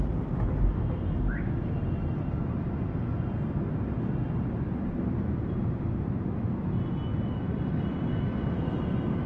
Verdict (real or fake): real